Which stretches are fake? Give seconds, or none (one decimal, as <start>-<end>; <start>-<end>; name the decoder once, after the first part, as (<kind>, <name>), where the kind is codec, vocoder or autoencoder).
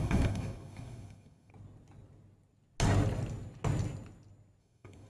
0.0-1.5 (codec, SNAC); 4.6-5.1